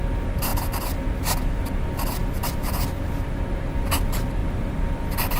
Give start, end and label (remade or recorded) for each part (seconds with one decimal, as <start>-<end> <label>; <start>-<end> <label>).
0.0-2.2 recorded; 2.2-3.3 remade; 3.3-4.4 recorded; 4.4-5.4 remade